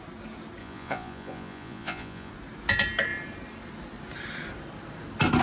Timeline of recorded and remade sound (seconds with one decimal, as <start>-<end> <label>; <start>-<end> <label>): 0.0-0.6 recorded; 0.6-2.3 remade; 2.3-5.4 recorded